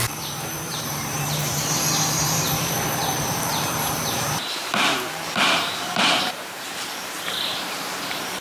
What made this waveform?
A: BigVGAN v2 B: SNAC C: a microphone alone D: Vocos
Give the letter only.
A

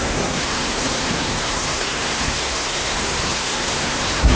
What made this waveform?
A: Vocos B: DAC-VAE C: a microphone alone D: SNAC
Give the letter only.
D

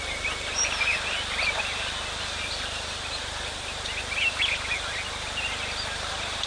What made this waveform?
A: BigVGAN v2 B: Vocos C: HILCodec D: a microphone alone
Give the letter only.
D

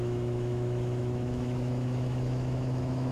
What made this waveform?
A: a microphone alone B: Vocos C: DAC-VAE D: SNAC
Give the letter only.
C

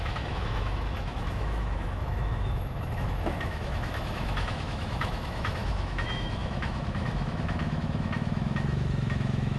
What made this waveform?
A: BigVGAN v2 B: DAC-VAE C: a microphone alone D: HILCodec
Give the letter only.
B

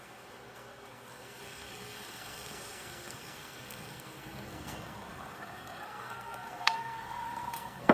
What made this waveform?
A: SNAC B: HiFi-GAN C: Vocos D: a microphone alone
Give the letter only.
A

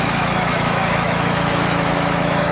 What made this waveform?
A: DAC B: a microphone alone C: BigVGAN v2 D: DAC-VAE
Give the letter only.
D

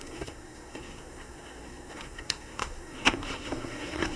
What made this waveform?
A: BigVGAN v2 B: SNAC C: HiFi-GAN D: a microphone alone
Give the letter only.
B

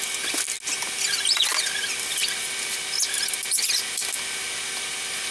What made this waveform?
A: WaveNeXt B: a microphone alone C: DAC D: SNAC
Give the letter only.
B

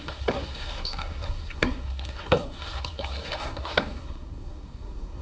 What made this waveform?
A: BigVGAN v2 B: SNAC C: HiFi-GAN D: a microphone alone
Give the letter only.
B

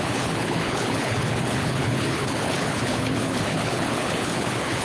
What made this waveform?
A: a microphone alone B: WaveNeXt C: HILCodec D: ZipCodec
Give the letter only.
C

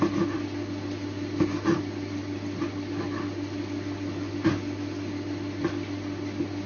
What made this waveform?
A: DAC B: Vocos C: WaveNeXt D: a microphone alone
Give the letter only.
D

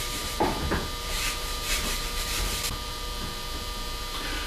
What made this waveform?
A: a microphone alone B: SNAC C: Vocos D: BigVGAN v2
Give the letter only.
D